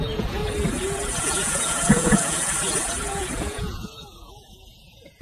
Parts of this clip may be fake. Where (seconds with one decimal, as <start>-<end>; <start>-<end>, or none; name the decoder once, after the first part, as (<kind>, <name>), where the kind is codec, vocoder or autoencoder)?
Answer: 0.0-0.4 (vocoder, Vocos); 1.2-2.5; 3.2-5.2